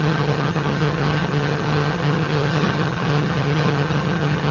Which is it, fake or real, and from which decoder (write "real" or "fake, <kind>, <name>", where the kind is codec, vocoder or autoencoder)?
fake, vocoder, HiFi-GAN